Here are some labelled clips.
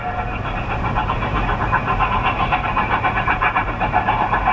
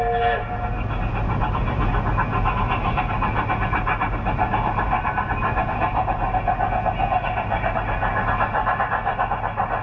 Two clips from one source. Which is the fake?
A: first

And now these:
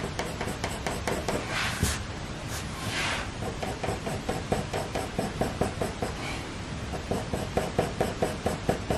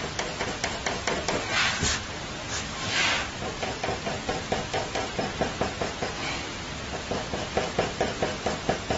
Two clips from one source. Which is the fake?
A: first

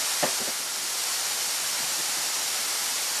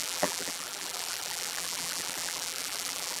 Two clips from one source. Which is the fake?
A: second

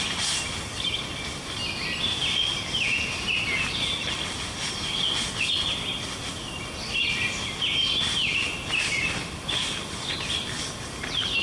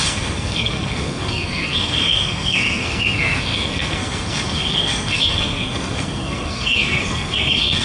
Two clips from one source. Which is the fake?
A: second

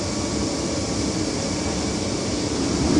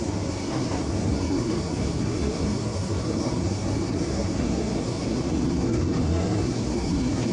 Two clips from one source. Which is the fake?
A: second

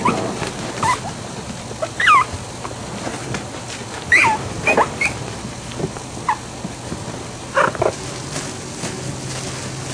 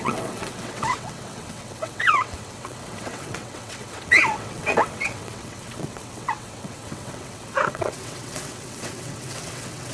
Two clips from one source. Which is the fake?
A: second